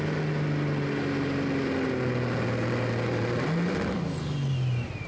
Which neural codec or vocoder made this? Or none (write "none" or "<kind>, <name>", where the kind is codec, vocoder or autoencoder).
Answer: none